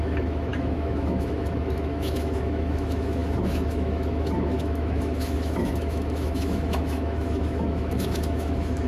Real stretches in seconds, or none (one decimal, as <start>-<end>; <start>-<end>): none